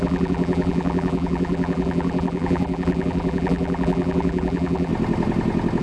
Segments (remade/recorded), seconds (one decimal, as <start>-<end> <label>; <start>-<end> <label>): 0.0-4.9 remade; 4.9-5.8 recorded